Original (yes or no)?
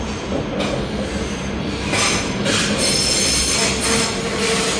yes